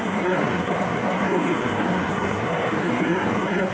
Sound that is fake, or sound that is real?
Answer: fake